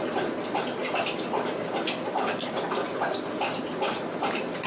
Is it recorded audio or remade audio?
recorded